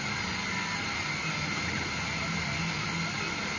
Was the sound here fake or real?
real